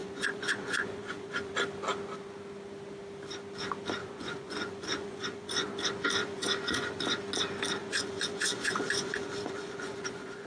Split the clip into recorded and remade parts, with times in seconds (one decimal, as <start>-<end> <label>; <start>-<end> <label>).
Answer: 0.0-1.5 remade; 1.5-4.0 recorded; 4.0-5.7 remade; 5.7-6.2 recorded; 6.2-7.0 remade; 7.0-7.8 recorded; 7.8-10.5 remade